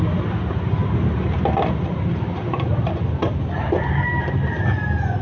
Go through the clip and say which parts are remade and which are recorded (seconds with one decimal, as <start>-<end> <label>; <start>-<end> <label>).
0.0-5.2 recorded